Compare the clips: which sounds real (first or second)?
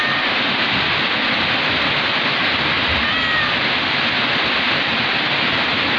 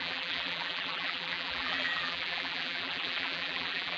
first